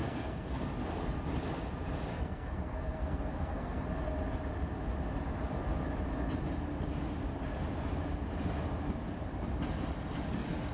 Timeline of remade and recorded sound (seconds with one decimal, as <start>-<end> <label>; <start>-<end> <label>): 0.0-0.6 remade; 0.6-2.1 recorded; 2.1-3.8 remade; 3.8-10.7 recorded